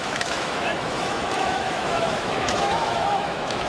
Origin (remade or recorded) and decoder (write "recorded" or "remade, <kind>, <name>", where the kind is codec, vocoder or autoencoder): remade, autoencoder, DAC-VAE